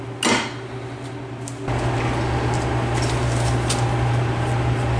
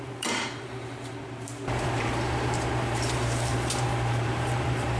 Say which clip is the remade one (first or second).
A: second